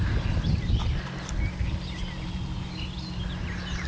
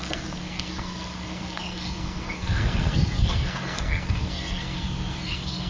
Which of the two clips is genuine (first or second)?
first